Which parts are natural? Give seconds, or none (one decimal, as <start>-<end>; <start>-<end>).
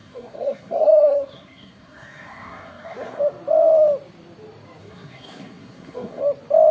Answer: 3.2-4.8; 6.2-6.7